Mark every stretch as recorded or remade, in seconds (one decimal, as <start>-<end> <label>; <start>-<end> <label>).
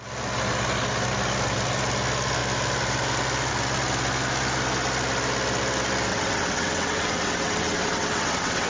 0.0-6.1 recorded; 6.1-8.7 remade